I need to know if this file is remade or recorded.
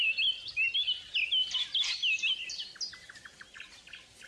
recorded